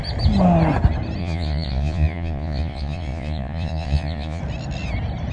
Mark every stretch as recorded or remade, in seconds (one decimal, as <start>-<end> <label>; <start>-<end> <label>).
0.0-1.2 recorded; 1.2-4.4 remade; 4.4-5.3 recorded